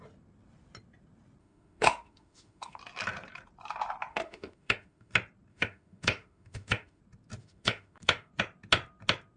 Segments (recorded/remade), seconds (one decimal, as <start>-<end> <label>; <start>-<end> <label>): 0.0-1.4 recorded; 1.4-2.8 remade; 2.8-4.1 recorded; 4.1-5.1 remade; 5.1-5.5 recorded; 5.5-7.0 remade; 7.0-7.4 recorded; 7.4-8.3 remade; 8.3-9.4 recorded